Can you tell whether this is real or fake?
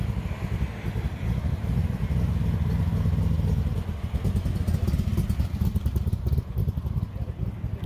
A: real